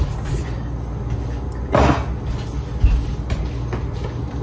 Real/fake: real